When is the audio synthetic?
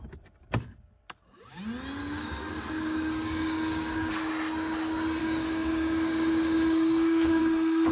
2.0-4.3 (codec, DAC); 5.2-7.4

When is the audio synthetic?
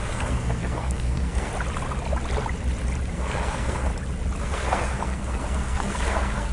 0.0-1.5 (codec, SNAC); 3.1-3.9; 4.4-6.5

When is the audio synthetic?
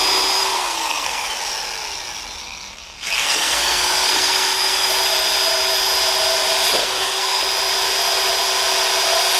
0.4-1.3 (codec, SNAC); 2.4-4.9; 6.8-7.4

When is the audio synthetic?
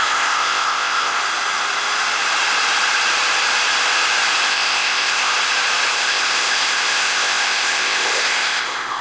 0.0-1.2 (codec, ZipCodec); 4.5-5.3; 5.9-9.0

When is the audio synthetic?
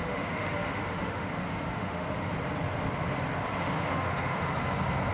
0.0-2.3 (autoencoder, DAC-VAE); 3.6-4.4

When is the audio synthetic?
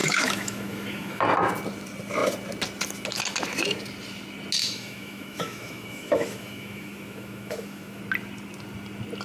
0.0-1.2 (autoencoder, DAC-VAE); 4.6-8.0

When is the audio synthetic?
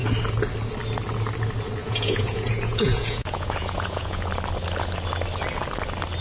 1.8-4.3 (vocoder, Vocos)